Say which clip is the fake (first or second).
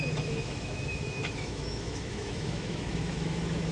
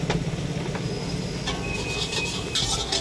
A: first